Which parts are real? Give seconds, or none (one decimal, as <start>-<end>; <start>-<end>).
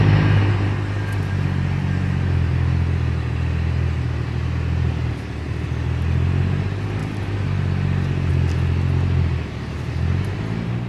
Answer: 0.0-10.9